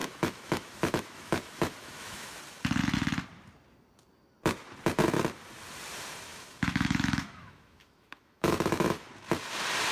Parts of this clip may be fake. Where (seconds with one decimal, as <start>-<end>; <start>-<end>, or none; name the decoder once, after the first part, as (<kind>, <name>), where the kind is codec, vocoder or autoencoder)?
0.0-2.3 (autoencoder, DAC-VAE); 6.3-9.1